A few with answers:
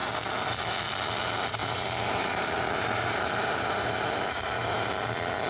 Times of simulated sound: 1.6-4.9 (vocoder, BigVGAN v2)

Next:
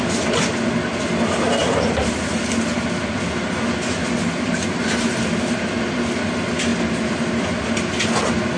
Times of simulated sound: none

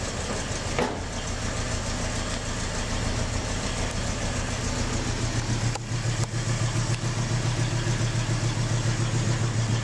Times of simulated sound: 3.4-4.6 (vocoder, BigVGAN v2)

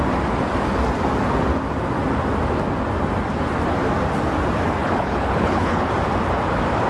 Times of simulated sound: 4.8-5.9 (codec, HILCodec)